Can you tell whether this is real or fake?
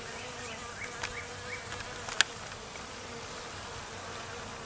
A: real